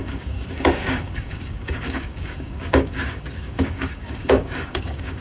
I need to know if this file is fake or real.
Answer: fake